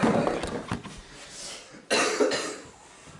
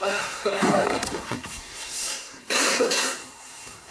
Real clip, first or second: first